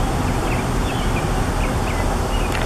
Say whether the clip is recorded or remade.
recorded